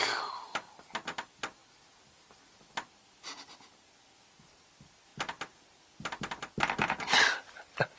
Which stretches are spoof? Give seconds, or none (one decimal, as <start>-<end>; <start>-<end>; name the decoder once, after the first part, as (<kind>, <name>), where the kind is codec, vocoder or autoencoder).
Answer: none